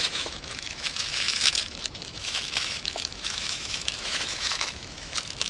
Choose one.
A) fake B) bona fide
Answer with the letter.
A